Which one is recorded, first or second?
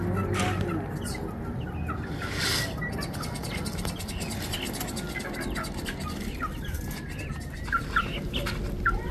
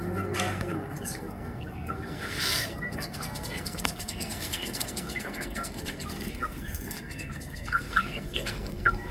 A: first